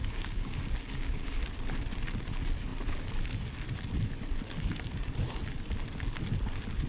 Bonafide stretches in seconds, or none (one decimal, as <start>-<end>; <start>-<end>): 1.4-6.9